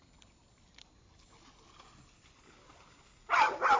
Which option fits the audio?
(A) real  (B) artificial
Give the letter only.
A